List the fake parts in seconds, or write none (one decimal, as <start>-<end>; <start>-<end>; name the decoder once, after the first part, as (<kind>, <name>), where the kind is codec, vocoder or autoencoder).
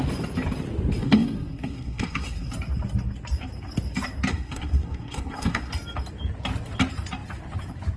1.0-2.5 (codec, SNAC); 4.3-5.7